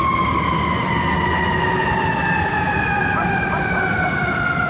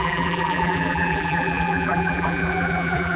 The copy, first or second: second